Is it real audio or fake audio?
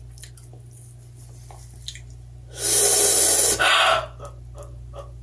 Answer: real